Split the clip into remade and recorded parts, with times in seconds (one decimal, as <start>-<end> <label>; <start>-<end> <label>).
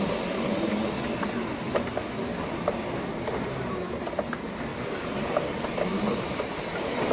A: 0.0-2.3 recorded; 2.3-4.2 remade; 4.2-4.7 recorded; 4.7-5.5 remade; 5.5-5.9 recorded; 5.9-7.1 remade